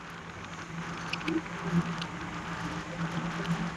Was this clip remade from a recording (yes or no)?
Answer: no